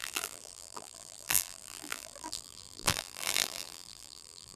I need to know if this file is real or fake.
fake